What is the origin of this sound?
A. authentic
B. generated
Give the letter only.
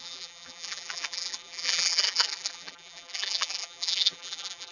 B